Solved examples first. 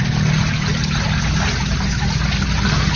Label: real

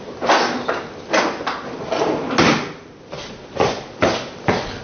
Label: real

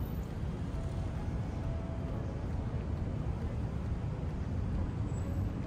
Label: real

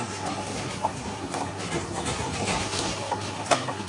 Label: fake